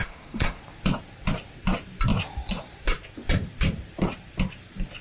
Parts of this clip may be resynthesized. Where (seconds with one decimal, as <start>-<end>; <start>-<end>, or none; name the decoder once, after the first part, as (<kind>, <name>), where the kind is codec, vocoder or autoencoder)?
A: 0.0-0.6 (codec, SNAC)